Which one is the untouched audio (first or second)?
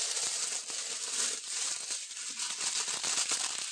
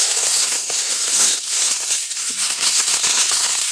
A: first